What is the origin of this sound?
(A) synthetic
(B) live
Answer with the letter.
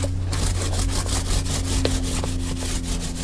B